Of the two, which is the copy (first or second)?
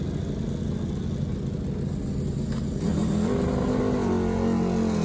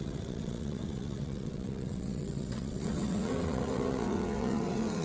second